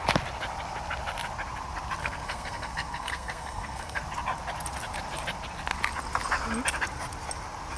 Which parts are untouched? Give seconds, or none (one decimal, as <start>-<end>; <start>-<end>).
0.0-2.0; 4.0-7.8